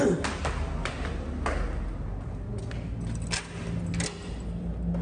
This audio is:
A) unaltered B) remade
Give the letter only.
A